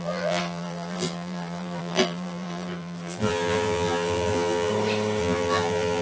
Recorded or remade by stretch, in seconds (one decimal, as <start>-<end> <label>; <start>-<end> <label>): 0.0-4.7 remade; 4.7-5.2 recorded; 5.2-6.0 remade